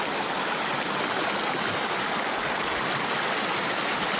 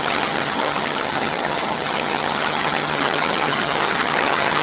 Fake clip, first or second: second